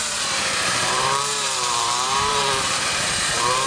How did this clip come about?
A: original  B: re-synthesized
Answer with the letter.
B